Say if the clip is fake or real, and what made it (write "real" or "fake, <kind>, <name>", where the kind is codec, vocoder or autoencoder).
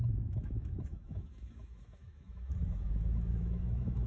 fake, autoencoder, DAC-VAE